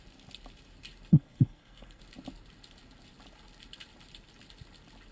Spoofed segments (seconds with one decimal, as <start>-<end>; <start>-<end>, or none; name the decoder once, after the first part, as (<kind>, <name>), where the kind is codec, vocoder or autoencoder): 1.1-2.0 (codec, SNAC)